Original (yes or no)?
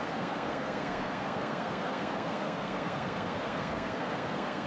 no